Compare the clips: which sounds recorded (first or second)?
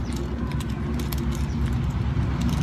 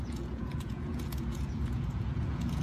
first